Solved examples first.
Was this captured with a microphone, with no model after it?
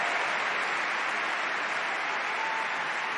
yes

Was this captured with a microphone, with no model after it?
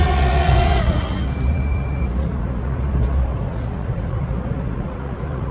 no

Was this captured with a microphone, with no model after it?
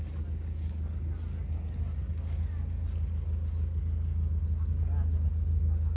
yes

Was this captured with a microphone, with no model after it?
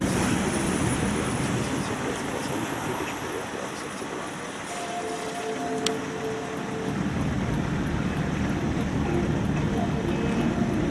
yes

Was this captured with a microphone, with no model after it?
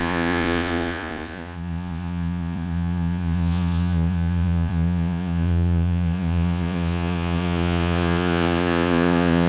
no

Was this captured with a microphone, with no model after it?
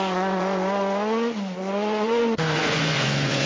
no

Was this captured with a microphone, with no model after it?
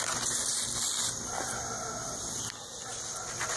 yes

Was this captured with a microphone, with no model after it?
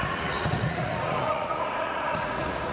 no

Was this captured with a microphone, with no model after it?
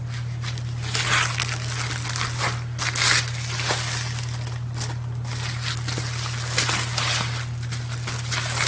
yes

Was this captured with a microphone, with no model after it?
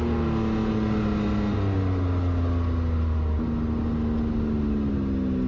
yes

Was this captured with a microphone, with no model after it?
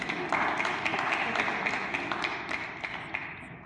yes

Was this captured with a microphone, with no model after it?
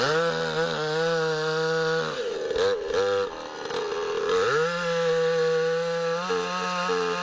yes